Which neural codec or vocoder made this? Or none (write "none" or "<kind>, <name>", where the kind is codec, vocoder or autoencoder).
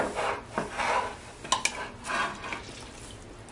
none